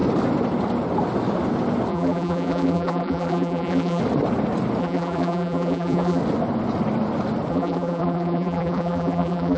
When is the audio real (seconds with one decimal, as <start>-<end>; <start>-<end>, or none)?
0.0-1.9; 4.0-4.8; 6.2-7.5